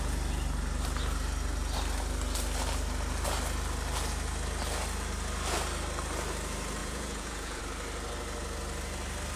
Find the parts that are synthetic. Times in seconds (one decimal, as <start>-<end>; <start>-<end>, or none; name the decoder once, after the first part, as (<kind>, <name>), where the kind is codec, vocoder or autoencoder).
6.8-7.6 (vocoder, Vocos)